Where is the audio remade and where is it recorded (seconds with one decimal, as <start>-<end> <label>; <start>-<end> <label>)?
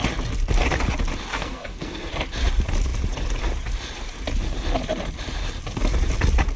0.0-1.3 recorded; 1.3-2.1 remade; 2.1-6.6 recorded